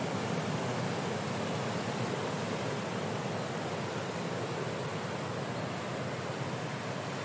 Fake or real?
real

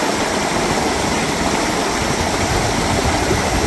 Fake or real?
real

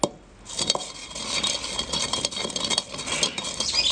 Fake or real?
real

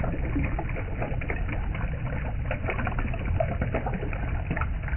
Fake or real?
real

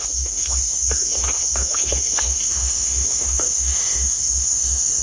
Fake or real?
fake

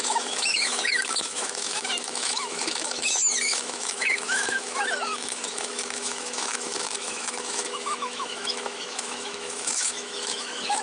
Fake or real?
fake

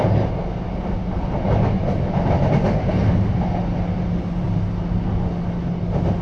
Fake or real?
real